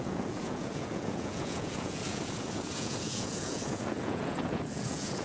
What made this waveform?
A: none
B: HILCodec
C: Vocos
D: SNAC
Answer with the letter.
C